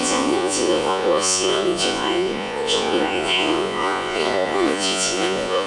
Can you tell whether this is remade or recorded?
remade